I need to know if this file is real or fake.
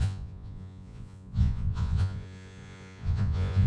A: fake